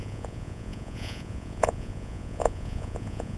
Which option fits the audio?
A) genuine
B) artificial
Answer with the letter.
B